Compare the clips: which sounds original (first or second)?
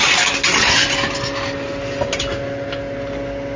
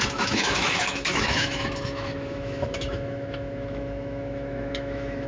first